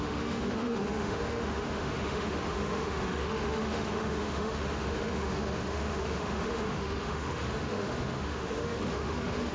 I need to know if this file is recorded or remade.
remade